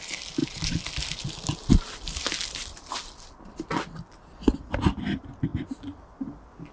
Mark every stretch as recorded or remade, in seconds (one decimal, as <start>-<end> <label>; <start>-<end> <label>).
0.0-6.7 recorded